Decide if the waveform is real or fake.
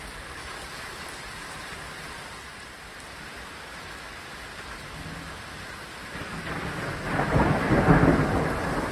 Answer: real